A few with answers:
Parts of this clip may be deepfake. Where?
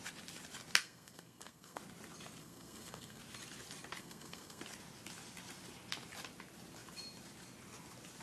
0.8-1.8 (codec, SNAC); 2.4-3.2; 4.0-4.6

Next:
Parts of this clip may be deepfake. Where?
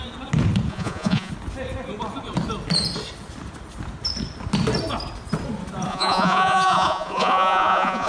0.7-1.3 (vocoder, Vocos); 5.9-8.1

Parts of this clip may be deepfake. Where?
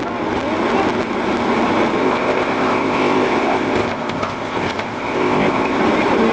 2.0-5.8 (codec, ZipCodec)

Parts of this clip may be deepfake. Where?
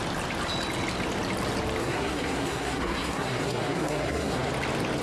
1.8-4.5 (codec, SNAC)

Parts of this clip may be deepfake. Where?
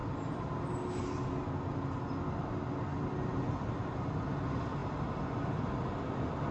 none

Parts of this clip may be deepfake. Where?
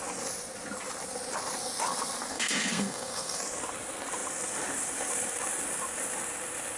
2.3-3.4 (codec, SNAC)